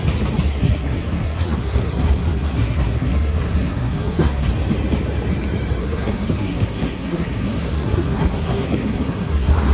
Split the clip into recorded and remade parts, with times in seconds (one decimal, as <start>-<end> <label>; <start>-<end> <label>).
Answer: 0.0-0.5 recorded; 0.5-4.5 remade; 4.5-5.8 recorded; 5.8-9.7 remade